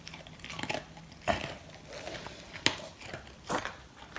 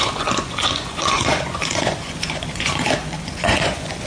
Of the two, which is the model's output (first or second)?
second